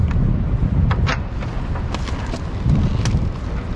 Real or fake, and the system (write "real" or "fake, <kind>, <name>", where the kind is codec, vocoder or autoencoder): real